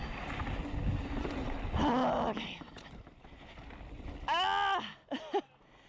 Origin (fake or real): real